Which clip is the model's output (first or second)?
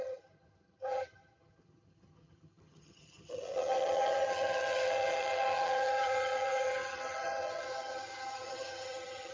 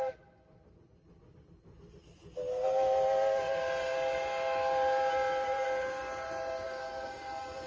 first